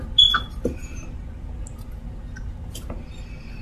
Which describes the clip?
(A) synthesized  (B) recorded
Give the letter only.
B